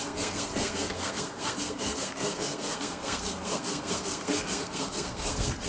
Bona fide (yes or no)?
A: no